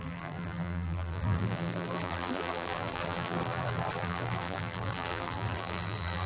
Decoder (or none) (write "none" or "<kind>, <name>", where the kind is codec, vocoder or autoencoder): vocoder, BigVGAN v2